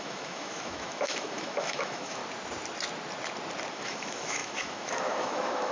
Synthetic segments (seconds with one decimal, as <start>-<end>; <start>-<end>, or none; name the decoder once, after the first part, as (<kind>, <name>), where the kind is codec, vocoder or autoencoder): 0.0-2.2 (autoencoder, DAC-VAE); 3.7-5.7